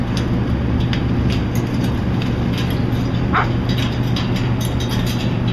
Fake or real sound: real